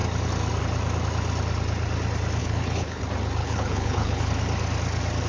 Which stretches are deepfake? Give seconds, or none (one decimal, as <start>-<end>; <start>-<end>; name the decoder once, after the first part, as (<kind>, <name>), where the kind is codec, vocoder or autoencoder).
2.4-3.0 (codec, HILCodec); 3.4-4.3